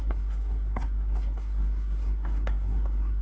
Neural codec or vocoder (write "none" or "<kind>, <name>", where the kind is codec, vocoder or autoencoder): codec, SNAC